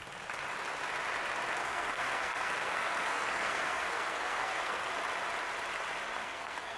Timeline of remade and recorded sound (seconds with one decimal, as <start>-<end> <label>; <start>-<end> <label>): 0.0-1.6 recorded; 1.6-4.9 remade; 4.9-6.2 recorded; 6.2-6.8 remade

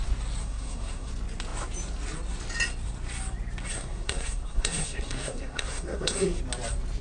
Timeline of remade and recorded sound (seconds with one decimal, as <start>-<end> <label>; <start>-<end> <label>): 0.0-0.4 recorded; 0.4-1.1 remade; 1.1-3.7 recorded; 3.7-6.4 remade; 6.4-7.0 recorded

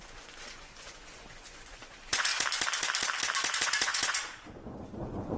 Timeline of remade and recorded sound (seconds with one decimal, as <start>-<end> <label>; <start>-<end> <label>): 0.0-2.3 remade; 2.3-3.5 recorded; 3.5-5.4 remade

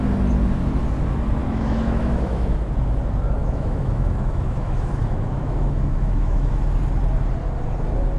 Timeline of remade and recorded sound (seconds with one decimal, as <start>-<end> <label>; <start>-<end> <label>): 0.0-1.4 recorded; 1.4-2.7 remade; 2.7-3.4 recorded; 3.4-6.6 remade; 6.6-8.2 recorded

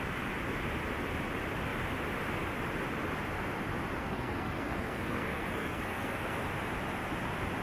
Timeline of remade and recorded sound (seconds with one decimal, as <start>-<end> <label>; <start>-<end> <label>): 0.0-4.0 recorded; 4.0-6.4 remade; 6.4-7.6 recorded

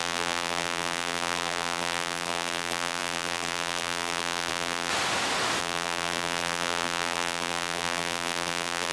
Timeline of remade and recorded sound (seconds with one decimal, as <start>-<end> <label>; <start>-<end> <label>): 0.0-4.9 remade; 4.9-5.6 recorded; 5.6-8.9 remade

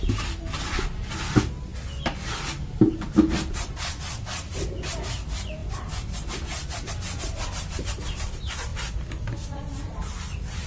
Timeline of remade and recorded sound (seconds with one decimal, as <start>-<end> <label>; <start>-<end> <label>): 0.0-10.7 recorded